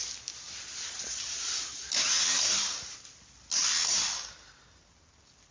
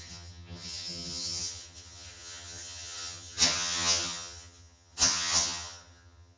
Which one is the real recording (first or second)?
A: first